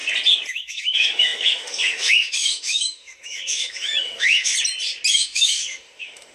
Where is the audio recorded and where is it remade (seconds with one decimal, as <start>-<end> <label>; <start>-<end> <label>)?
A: 0.0-0.5 recorded; 0.5-4.5 remade; 4.5-5.1 recorded; 5.1-6.3 remade